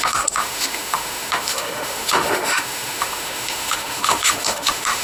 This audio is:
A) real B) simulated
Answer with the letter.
B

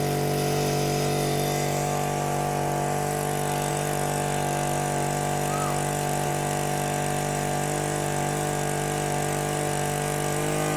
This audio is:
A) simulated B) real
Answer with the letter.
B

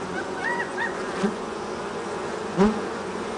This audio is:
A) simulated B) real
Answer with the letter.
A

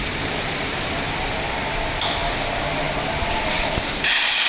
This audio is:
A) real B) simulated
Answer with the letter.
B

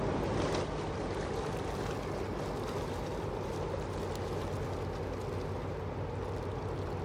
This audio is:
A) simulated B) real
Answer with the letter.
B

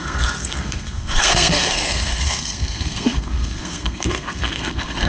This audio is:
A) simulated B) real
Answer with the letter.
A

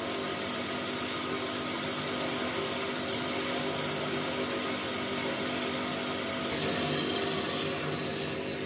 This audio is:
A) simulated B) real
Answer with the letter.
B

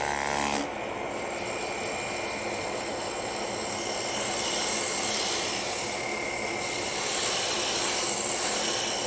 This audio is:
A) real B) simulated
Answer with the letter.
A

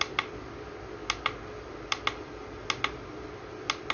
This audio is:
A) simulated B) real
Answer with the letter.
B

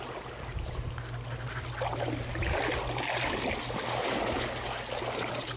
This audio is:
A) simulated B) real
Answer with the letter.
B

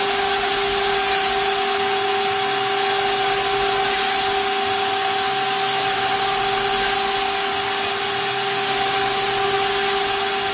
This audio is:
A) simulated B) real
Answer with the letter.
B